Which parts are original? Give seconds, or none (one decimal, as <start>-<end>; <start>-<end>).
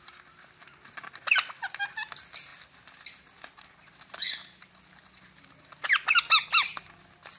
0.0-7.4